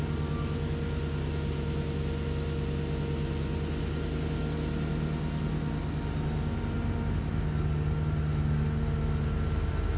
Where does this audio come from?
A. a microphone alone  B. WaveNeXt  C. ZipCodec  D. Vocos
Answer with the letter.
A